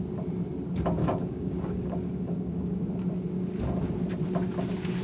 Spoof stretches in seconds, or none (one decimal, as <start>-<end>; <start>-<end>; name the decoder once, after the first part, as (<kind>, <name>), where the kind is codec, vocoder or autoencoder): 1.0-2.9 (codec, DAC)